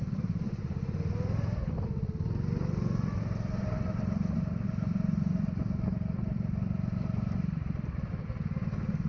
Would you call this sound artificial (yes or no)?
no